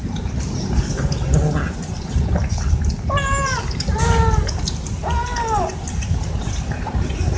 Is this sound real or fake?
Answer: real